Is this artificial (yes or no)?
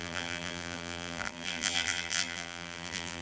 yes